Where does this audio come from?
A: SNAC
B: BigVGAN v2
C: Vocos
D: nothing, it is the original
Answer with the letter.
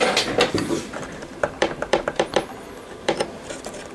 B